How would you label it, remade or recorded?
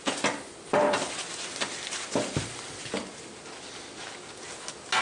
recorded